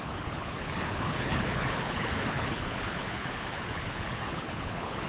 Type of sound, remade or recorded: remade